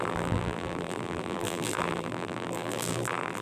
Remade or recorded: remade